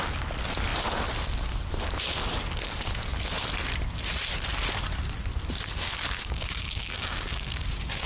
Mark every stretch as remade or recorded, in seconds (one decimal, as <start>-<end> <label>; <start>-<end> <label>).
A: 0.0-6.2 recorded; 6.2-8.1 remade